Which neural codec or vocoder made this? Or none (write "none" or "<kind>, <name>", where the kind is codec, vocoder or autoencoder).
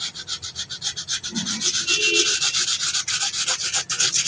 none